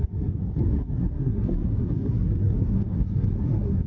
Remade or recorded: remade